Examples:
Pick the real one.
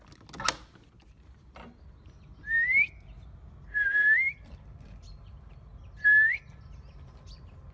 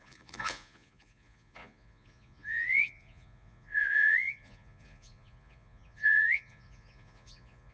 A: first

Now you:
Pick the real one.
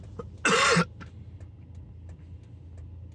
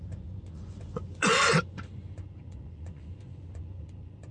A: first